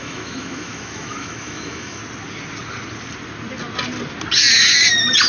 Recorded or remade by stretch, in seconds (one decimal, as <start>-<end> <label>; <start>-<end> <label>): 0.0-2.0 remade; 2.0-5.3 recorded